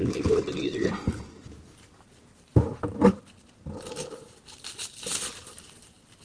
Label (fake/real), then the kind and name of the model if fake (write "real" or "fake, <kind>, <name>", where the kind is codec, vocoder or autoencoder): real